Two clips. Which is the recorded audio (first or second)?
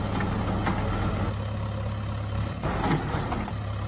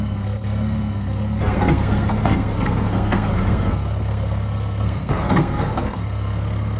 first